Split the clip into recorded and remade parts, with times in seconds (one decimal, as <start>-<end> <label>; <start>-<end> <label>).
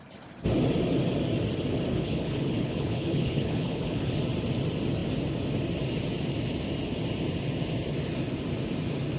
0.0-1.9 recorded; 1.9-4.2 remade; 4.2-9.2 recorded